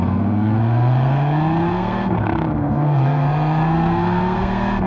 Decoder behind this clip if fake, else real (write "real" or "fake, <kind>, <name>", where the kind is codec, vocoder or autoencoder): fake, codec, SNAC